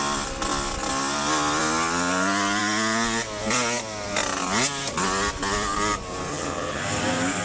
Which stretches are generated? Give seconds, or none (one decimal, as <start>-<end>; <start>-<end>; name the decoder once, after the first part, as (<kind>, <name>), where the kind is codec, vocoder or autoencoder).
6.3-6.8 (vocoder, HiFi-GAN)